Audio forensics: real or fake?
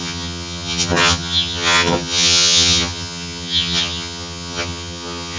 fake